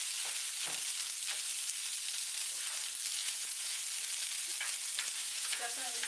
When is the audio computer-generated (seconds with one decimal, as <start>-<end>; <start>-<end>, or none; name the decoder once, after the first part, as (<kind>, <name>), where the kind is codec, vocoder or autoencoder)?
3.2-3.8 (vocoder, Vocos); 5.2-6.1